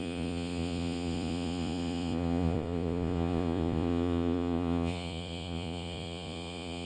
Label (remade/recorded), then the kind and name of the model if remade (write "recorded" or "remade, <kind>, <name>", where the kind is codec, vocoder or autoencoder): remade, vocoder, Vocos